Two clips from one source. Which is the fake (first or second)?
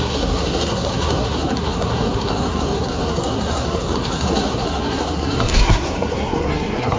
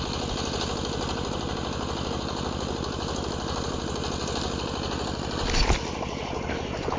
first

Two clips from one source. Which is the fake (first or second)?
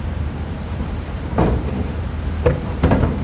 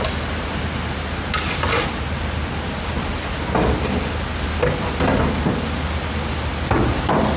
first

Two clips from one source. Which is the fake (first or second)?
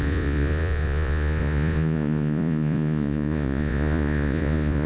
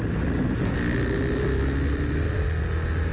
first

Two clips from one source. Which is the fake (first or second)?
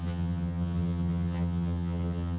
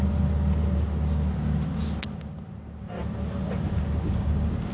first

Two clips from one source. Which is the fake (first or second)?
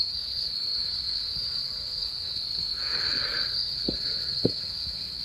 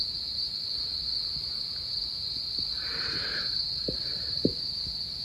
first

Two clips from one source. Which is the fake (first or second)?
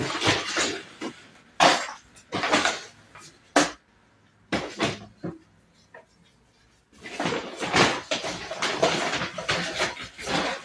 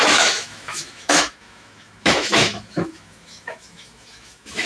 second